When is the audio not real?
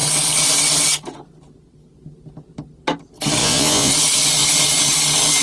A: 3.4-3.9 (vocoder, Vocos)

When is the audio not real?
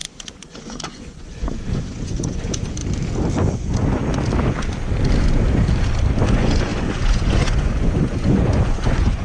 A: 0.0-2.8 (vocoder, Vocos); 3.5-4.0; 6.3-9.2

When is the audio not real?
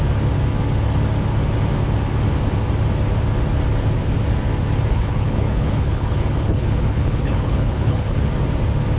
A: 4.9-8.3 (codec, HILCodec)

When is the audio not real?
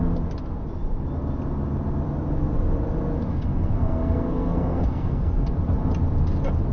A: 3.3-5.5 (codec, SNAC)